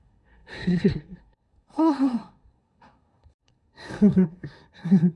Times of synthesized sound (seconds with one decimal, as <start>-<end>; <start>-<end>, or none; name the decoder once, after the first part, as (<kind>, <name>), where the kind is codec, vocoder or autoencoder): 0.0-5.2 (codec, SNAC)